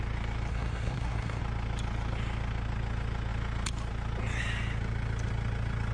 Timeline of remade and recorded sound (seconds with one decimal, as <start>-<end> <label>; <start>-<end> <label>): 0.0-0.5 recorded; 0.5-1.4 remade; 1.4-5.9 recorded